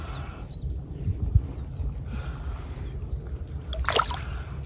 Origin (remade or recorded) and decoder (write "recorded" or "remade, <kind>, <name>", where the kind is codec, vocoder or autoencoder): recorded